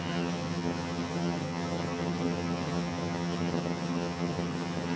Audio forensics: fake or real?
fake